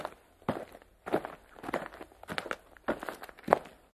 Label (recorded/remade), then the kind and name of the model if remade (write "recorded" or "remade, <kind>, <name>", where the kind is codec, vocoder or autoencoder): recorded